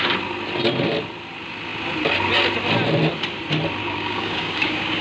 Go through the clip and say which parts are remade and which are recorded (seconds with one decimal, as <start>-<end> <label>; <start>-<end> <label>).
0.0-3.8 recorded; 3.8-5.0 remade